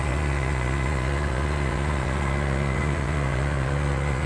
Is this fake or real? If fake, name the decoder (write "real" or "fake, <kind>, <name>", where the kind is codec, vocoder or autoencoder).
fake, vocoder, Vocos